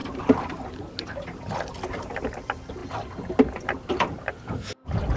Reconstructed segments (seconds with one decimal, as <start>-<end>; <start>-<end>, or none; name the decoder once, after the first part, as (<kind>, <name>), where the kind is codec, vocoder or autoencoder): none